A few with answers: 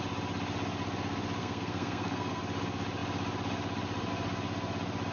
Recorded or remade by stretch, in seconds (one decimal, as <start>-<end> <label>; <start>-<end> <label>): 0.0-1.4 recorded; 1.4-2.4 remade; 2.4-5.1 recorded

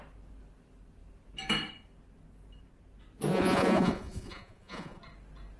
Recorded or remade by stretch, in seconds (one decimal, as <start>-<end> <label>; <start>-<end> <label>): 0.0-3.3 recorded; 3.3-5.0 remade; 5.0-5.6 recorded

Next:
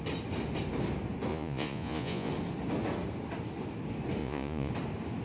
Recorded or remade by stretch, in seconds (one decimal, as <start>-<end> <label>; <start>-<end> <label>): 0.0-1.3 recorded; 1.3-2.3 remade; 2.3-4.2 recorded; 4.2-4.7 remade; 4.7-5.2 recorded

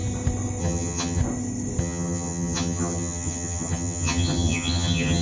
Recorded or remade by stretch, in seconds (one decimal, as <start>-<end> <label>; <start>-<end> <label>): 0.0-0.6 recorded; 0.6-1.2 remade; 1.2-1.8 recorded; 1.8-5.2 remade

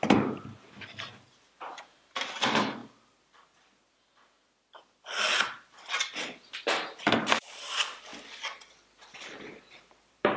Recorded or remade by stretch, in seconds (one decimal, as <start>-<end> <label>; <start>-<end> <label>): 0.0-2.8 remade; 2.8-6.6 recorded; 6.6-8.1 remade; 8.1-9.5 recorded; 9.5-10.4 remade

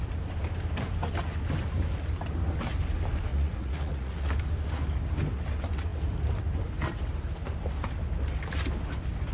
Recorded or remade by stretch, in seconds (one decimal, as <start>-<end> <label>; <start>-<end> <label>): 0.0-3.3 recorded; 3.3-4.3 remade; 4.3-9.3 recorded